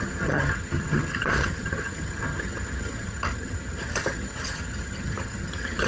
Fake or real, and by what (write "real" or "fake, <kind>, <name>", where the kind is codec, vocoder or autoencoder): fake, vocoder, HiFi-GAN